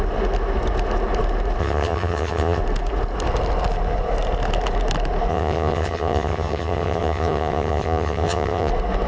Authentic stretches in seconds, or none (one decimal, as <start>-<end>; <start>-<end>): 0.0-1.6; 2.6-5.3; 8.7-9.1